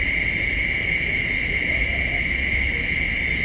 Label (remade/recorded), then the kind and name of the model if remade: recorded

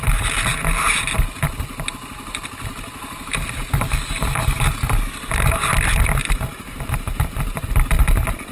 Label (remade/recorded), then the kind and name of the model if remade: recorded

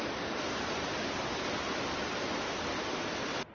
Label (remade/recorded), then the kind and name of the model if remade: recorded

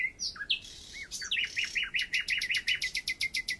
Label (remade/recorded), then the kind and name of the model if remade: recorded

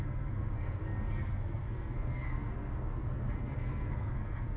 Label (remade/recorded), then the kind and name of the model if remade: remade, codec, SNAC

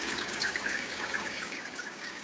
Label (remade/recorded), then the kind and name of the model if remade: remade, codec, DAC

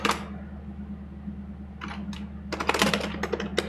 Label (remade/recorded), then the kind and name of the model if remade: recorded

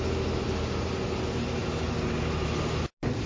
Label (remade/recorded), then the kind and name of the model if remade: recorded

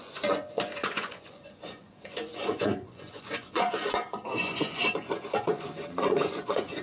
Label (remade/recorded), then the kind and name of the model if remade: remade, vocoder, Vocos